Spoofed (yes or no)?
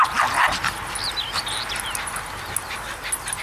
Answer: no